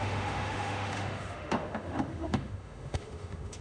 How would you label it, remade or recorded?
remade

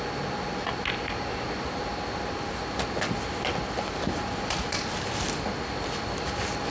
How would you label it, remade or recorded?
recorded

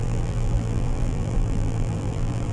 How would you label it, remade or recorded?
remade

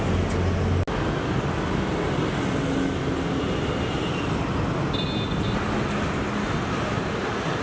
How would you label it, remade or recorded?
recorded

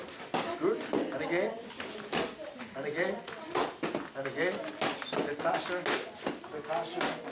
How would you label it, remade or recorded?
recorded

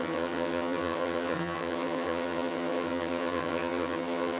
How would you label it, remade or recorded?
remade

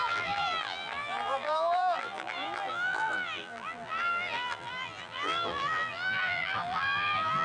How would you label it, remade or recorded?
remade